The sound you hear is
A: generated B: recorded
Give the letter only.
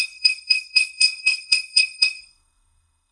A